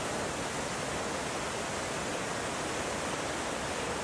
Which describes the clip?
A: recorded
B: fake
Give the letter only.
A